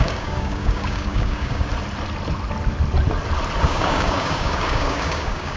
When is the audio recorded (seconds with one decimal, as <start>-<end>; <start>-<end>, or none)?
1.7-3.6